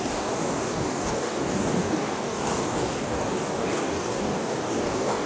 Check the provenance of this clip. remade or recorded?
remade